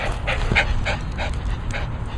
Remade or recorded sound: recorded